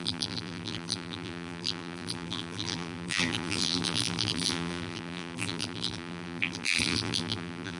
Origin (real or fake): fake